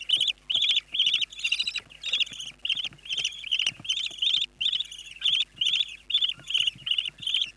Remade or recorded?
recorded